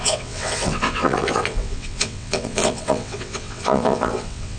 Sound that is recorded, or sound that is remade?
remade